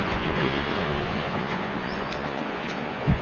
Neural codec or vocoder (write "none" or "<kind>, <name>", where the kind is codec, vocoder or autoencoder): vocoder, Vocos